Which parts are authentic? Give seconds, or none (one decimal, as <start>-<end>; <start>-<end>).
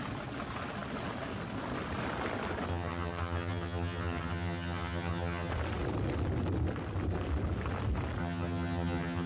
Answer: 0.0-2.7; 5.5-8.2